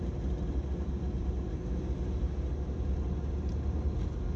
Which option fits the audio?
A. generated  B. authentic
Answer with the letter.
B